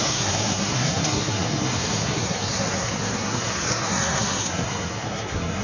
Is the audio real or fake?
fake